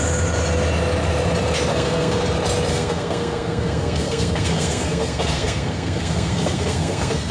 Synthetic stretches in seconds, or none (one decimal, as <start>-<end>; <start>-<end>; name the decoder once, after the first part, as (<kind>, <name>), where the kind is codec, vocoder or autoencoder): 1.7-2.2 (codec, SNAC); 2.7-7.3